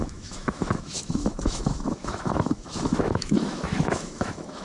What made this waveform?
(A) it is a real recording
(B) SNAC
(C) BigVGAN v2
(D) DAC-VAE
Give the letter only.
D